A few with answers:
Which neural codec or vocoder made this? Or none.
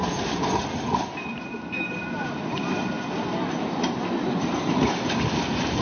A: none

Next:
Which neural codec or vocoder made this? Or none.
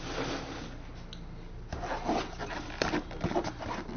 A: none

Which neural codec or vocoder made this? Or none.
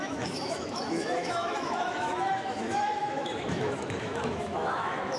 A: autoencoder, DAC-VAE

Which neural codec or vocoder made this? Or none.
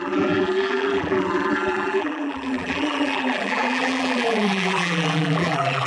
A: vocoder, BigVGAN v2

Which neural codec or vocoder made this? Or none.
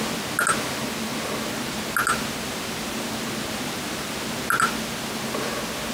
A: none